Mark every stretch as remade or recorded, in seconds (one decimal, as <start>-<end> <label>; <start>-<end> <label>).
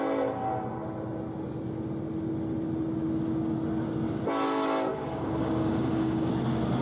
0.0-4.9 recorded; 4.9-6.3 remade; 6.3-6.8 recorded